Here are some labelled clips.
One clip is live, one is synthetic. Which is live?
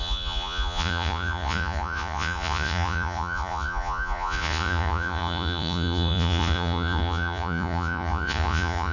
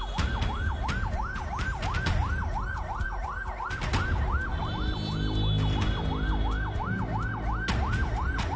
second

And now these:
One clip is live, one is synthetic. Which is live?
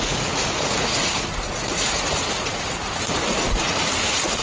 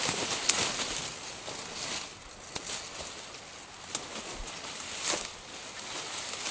second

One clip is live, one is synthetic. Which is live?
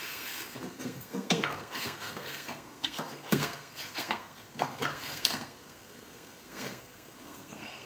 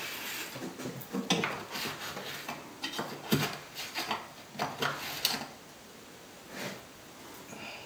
second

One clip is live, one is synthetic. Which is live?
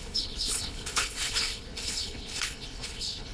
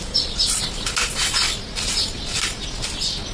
second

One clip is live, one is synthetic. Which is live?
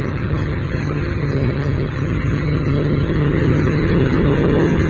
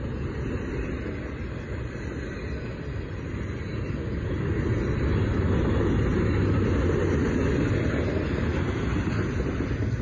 second